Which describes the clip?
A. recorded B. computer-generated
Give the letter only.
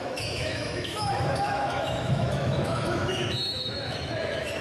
B